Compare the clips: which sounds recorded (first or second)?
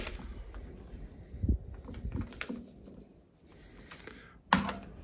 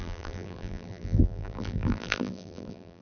first